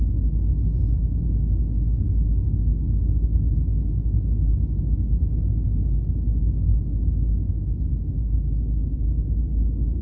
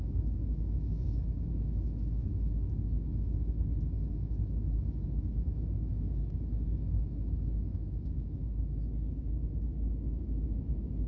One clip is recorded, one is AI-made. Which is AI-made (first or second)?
second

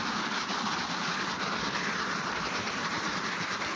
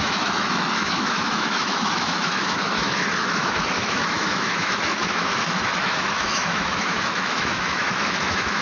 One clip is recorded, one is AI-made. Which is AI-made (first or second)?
second